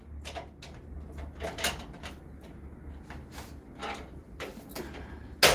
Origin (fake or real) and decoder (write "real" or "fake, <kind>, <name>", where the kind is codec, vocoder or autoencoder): real